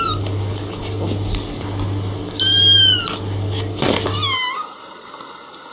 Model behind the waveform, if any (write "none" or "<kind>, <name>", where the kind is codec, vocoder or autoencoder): none